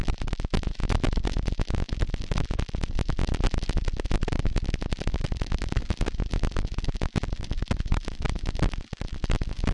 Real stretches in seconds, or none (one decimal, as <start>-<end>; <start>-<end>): 0.8-1.8; 5.8-7.2

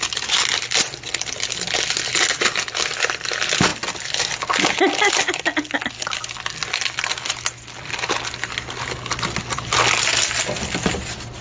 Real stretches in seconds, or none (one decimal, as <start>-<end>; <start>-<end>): 0.0-11.4

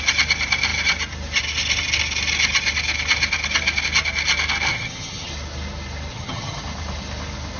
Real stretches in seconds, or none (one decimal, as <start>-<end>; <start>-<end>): 0.0-4.7; 5.3-6.1; 6.6-7.6

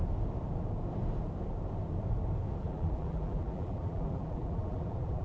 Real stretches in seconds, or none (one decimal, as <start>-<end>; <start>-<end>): 0.0-2.6

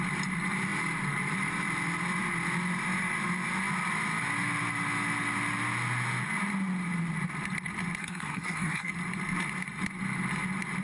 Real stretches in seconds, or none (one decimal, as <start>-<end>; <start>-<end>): 0.0-8.0; 8.9-10.8

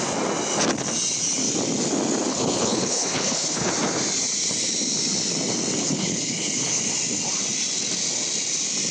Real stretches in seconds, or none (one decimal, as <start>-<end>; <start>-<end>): 0.0-2.3; 3.7-5.8; 6.8-8.9

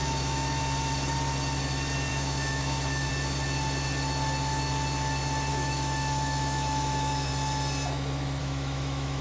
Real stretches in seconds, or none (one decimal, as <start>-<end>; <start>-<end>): 0.6-2.1; 3.1-5.5; 7.3-8.4

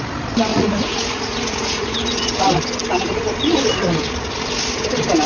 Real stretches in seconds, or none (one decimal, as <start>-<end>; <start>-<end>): 0.0-0.5; 2.4-5.3